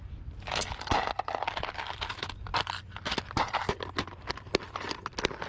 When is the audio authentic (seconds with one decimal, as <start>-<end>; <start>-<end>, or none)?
0.0-5.5